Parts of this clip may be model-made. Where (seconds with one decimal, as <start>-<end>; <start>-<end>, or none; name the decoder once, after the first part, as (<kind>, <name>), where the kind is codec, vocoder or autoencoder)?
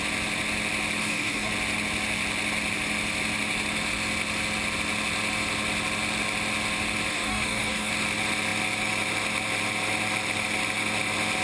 1.0-1.5 (codec, DAC); 7.1-7.9